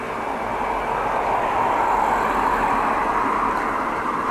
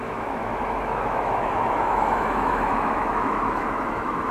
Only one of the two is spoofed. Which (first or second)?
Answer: second